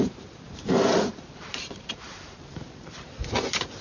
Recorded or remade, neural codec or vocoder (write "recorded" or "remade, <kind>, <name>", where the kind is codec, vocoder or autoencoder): remade, vocoder, BigVGAN v2